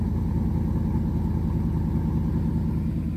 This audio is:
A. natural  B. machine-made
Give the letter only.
A